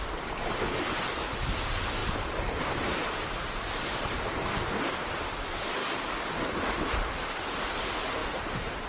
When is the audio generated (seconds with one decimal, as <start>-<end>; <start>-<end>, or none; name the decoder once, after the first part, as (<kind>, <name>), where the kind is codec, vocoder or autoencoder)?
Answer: 5.8-6.3 (codec, DAC)